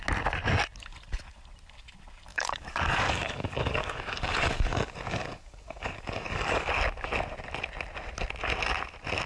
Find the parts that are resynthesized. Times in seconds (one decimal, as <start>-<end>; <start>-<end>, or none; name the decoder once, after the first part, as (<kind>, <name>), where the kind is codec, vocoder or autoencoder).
2.3-6.7 (codec, DAC)

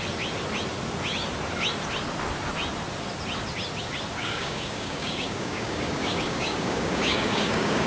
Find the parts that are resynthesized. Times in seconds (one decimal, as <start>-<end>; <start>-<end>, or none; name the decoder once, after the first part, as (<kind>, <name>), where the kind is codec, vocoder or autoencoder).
4.2-7.9 (codec, DAC)

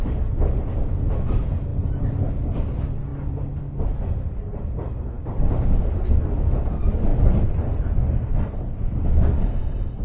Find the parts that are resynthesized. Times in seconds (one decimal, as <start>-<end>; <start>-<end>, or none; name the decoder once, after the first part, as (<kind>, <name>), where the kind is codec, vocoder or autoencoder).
none

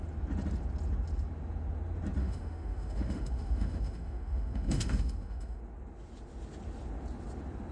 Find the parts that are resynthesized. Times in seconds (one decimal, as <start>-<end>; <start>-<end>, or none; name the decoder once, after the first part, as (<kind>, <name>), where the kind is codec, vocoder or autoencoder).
2.2-5.6 (autoencoder, DAC-VAE)

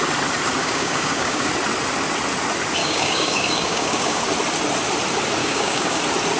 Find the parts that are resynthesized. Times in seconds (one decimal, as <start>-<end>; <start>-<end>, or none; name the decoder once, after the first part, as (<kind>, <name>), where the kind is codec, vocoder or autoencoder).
0.6-1.5 (codec, DAC); 2.8-4.2; 5.4-6.0

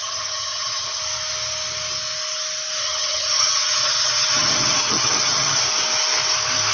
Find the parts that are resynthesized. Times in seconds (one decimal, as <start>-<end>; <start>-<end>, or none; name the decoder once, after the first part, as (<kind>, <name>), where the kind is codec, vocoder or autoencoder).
0.0-1.0 (vocoder, HiFi-GAN); 2.8-5.6